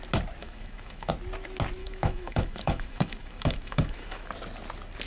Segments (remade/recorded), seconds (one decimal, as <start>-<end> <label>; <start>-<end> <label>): 0.0-0.4 recorded; 0.4-1.1 remade; 1.1-1.8 recorded; 1.8-4.3 remade; 4.3-5.1 recorded